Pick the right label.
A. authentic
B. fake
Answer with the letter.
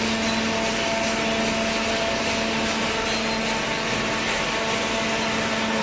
A